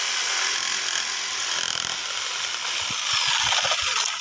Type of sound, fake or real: real